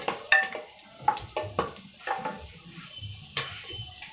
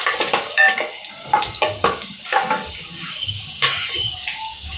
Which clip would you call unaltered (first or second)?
first